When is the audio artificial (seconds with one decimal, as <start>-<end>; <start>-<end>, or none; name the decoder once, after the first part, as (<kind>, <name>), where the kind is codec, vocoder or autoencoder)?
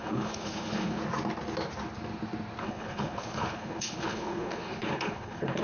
0.0-1.0 (codec, HILCodec); 2.6-5.6